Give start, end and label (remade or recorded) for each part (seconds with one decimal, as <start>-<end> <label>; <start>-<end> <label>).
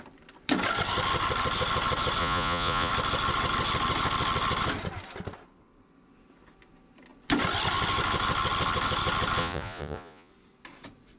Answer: 0.0-2.2 recorded; 2.2-2.9 remade; 2.9-9.4 recorded; 9.4-10.3 remade; 10.3-11.2 recorded